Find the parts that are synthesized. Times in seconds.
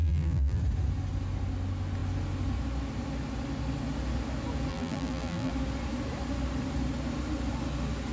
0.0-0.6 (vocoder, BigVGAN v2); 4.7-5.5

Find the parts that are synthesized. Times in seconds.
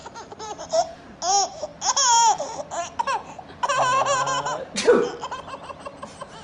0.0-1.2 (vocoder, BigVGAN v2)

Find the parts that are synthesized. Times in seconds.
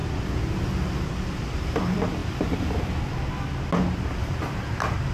4.2-5.1 (vocoder, BigVGAN v2)